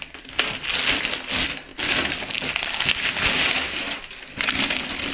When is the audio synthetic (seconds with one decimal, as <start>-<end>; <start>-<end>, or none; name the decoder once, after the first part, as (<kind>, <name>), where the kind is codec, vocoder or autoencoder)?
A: none

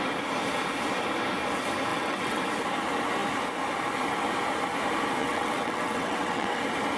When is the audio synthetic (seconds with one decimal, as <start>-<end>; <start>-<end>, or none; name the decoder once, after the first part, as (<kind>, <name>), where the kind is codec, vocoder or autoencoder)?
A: 1.9-2.4 (vocoder, WaveNeXt); 5.2-6.6

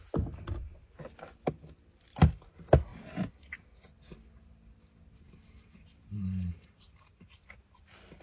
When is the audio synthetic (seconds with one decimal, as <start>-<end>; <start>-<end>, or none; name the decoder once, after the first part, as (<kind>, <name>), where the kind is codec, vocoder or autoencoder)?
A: none

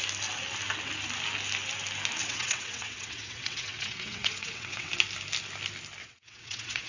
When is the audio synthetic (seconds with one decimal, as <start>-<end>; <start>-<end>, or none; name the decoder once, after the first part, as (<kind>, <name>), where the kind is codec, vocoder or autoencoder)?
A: 2.2-4.9 (vocoder, WaveNeXt); 6.0-6.9

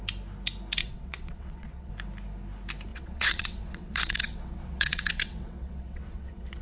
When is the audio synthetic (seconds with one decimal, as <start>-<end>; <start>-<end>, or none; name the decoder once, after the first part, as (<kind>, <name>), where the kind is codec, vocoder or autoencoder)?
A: 0.8-1.9 (vocoder, WaveNeXt); 2.9-6.6

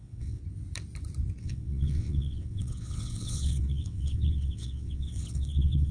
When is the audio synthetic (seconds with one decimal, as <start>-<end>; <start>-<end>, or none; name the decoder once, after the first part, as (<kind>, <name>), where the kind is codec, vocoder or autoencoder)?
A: 0.0-0.4 (vocoder, WaveNeXt); 1.4-5.9

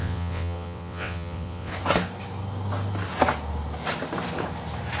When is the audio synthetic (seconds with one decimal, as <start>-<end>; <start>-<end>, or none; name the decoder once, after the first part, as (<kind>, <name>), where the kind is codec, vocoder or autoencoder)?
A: 0.0-1.7 (vocoder, WaveNeXt)

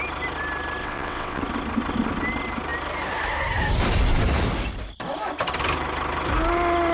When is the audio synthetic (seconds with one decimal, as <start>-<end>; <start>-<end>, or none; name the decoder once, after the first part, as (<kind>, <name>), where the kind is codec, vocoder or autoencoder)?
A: 0.8-1.4 (vocoder, WaveNeXt)